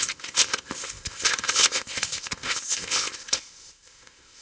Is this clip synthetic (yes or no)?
yes